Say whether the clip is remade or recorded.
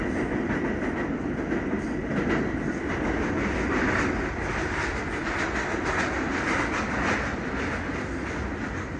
recorded